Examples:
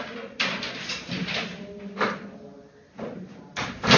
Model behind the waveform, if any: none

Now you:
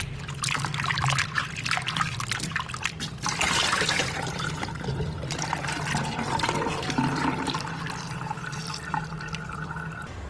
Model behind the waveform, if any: none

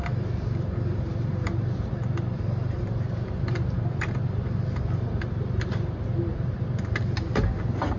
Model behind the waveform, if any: vocoder, BigVGAN v2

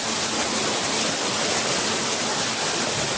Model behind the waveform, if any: none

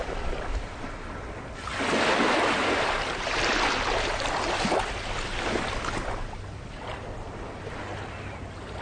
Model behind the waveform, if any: none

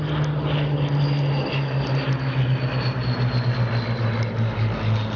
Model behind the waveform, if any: none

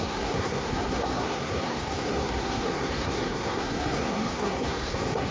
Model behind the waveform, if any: codec, SNAC